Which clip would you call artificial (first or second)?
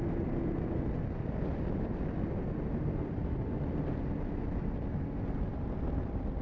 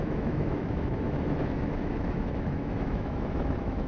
second